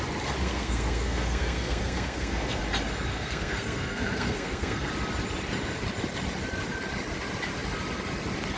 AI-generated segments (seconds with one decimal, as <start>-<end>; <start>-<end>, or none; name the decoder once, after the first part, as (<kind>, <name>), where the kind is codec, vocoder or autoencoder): 0.4-2.6 (codec, SNAC); 3.1-4.9